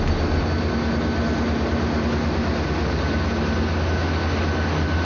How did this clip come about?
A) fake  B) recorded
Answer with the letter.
B